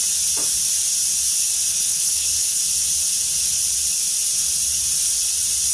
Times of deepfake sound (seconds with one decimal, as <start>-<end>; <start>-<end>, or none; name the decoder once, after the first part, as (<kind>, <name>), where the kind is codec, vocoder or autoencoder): 1.7-2.6 (codec, HILCodec)